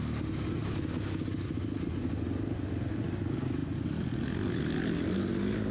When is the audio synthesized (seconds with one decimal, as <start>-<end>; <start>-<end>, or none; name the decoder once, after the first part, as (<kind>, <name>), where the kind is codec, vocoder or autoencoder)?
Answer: none